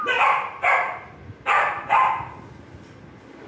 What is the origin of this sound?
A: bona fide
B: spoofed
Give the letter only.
A